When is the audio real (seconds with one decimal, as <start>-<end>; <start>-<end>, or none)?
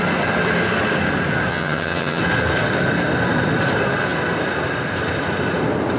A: 0.0-1.5; 2.2-6.0